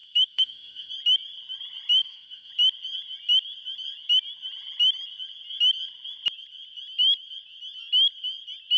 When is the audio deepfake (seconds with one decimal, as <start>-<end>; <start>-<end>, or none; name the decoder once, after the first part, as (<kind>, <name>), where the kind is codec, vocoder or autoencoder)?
0.0-0.9 (autoencoder, DAC-VAE); 2.0-2.5